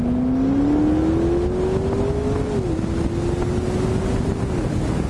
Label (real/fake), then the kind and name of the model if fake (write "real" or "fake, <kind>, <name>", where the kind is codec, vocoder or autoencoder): real